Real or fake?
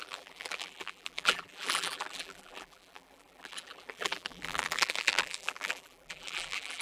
fake